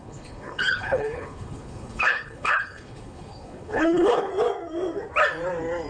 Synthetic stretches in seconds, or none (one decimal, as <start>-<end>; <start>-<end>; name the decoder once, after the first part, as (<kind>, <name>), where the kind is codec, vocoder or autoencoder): 0.0-4.3 (codec, HILCodec)